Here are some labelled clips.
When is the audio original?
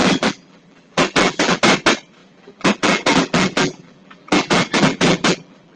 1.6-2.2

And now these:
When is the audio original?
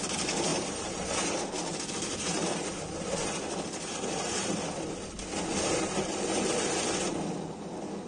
0.0-0.5; 1.5-8.1